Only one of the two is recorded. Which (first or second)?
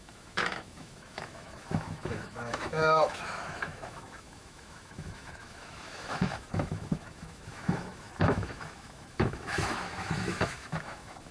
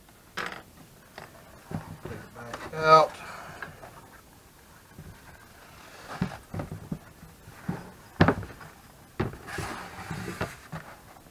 second